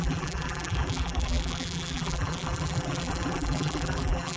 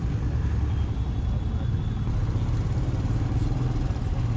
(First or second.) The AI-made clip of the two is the first